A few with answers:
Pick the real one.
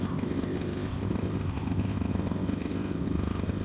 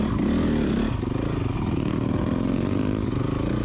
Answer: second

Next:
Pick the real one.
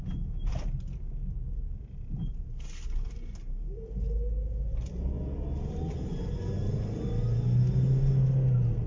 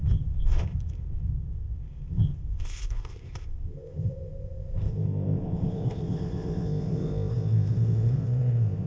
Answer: first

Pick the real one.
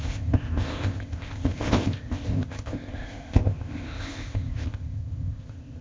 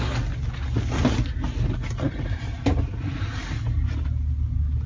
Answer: second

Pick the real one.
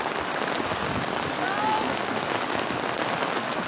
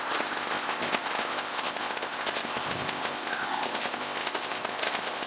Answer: first